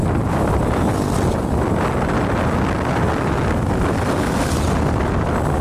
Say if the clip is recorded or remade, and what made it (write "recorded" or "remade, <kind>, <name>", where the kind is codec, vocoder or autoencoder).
recorded